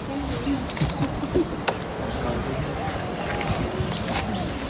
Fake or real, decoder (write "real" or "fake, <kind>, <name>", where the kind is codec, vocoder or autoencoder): real